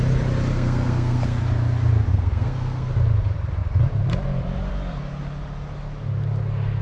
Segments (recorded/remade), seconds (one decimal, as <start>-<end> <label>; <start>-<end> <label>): 0.0-0.5 recorded; 0.5-1.4 remade; 1.4-2.1 recorded; 2.1-2.9 remade; 2.9-6.8 recorded